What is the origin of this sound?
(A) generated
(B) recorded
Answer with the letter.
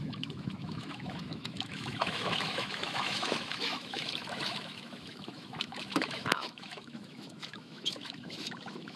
A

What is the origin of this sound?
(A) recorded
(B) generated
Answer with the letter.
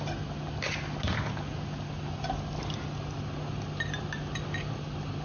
A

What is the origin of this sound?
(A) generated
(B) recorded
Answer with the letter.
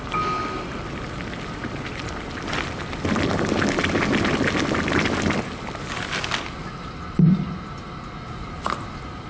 B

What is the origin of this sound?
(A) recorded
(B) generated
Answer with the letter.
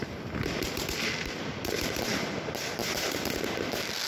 A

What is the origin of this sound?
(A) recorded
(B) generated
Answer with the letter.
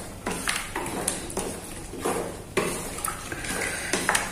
A